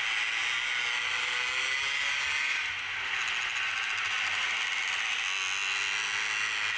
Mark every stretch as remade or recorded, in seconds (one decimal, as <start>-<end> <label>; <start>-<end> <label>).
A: 0.0-6.8 recorded